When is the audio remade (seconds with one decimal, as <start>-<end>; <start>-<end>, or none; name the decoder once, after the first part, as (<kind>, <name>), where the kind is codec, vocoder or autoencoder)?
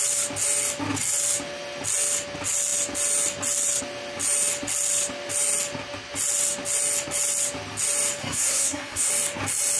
8.2-9.1 (codec, SNAC)